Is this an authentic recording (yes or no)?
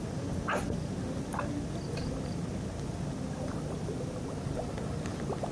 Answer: yes